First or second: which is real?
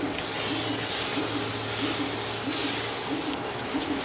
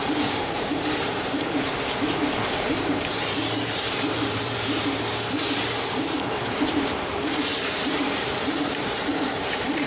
first